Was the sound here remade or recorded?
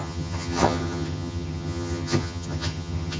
remade